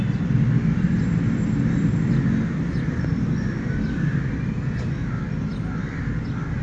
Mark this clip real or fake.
real